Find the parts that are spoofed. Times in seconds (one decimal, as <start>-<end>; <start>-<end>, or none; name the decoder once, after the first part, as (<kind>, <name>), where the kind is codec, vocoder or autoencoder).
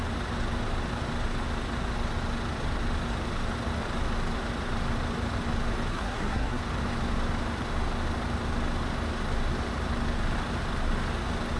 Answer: 5.9-6.6 (codec, SNAC)